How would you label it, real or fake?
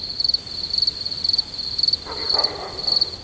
real